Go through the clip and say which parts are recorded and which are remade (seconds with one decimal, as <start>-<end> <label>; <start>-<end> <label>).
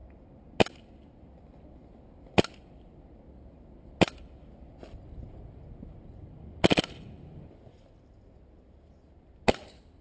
0.0-10.0 recorded